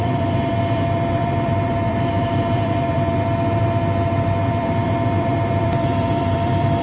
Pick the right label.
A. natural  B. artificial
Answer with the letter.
B